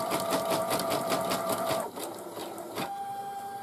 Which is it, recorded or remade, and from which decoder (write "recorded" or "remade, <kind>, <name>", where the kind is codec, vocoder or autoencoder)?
recorded